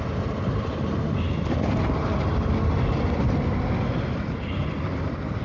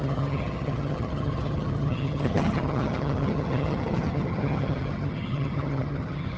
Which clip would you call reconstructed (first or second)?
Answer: second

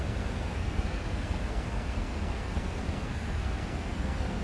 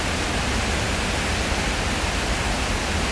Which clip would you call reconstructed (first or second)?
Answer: first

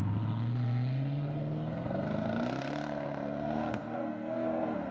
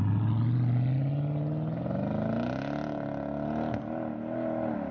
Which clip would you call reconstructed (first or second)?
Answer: first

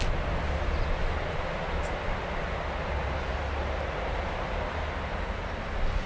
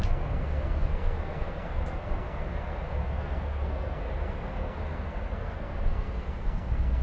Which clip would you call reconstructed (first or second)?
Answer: second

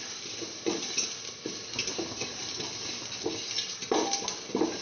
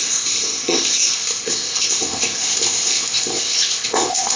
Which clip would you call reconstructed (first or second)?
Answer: second